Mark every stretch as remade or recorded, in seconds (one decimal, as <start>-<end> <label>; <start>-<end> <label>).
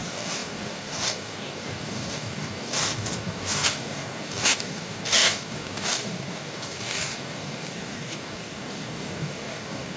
0.0-10.0 remade